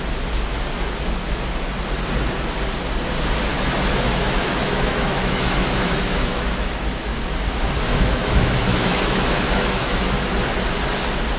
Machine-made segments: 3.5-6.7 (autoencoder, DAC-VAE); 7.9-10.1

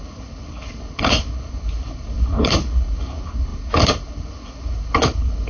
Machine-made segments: 0.0-5.5 (codec, HILCodec)

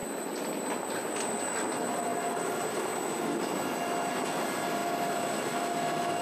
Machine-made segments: none

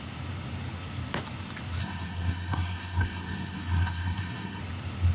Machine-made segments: 1.8-4.6 (codec, SNAC)

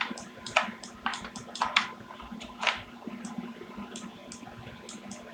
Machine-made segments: 0.0-4.2 (vocoder, BigVGAN v2)

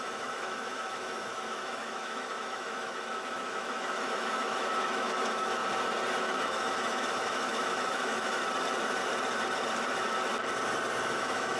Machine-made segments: 0.0-5.6 (autoencoder, DAC-VAE); 6.2-8.4; 11.0-11.6

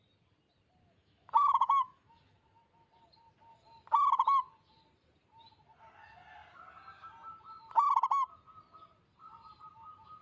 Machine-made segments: 0.8-2.9 (autoencoder, DAC-VAE)

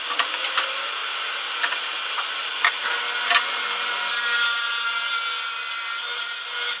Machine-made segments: none